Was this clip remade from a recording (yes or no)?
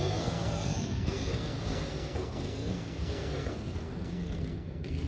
yes